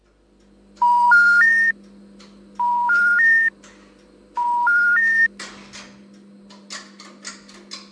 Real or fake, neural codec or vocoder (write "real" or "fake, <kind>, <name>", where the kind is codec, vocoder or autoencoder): real